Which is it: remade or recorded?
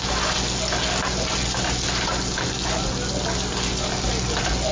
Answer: recorded